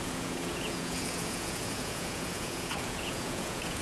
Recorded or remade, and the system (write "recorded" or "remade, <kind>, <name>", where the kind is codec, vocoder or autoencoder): remade, vocoder, Vocos